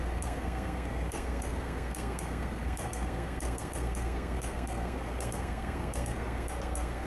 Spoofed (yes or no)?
yes